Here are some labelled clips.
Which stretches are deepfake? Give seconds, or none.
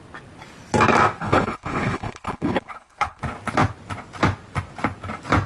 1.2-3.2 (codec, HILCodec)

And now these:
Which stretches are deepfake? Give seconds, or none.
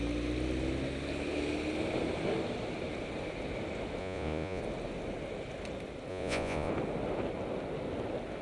4.0-4.6 (vocoder, Vocos); 6.1-6.7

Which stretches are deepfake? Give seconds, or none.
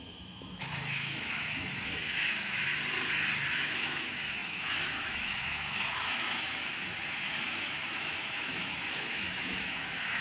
0.0-2.7 (autoencoder, DAC-VAE); 3.5-10.2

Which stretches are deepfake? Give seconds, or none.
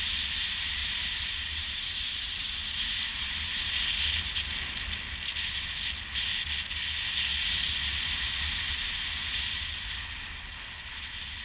0.8-4.6 (vocoder, BigVGAN v2)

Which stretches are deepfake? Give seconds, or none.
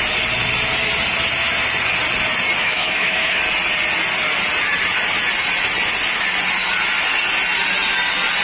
2.6-3.4 (autoencoder, DAC-VAE)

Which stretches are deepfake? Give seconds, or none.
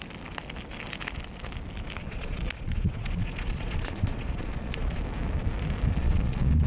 2.0-5.0 (vocoder, Vocos); 6.0-6.7